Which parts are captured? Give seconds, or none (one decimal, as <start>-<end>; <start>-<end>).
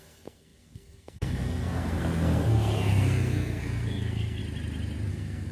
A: 4.4-5.1